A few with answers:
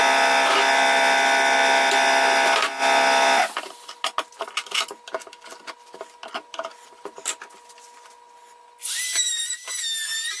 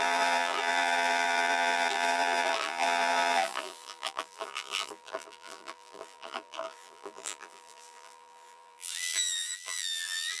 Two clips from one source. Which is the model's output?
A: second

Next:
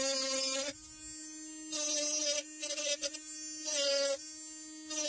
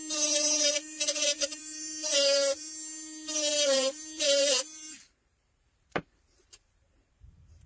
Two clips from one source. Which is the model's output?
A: second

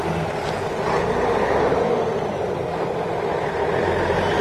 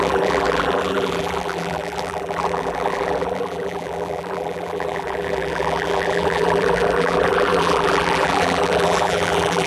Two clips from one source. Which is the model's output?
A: second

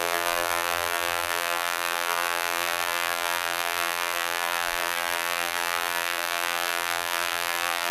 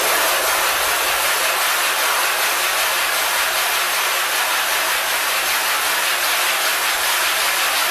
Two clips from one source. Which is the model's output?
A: first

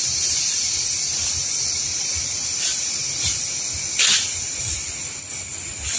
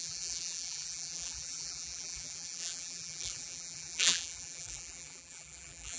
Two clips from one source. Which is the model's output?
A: second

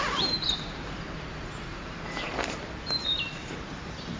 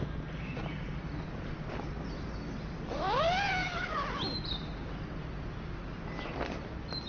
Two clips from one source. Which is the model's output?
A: first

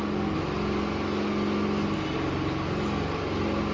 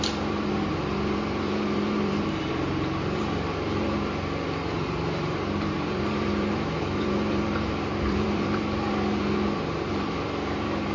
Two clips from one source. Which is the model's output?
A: second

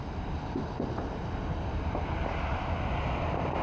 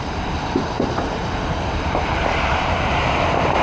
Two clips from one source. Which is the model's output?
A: second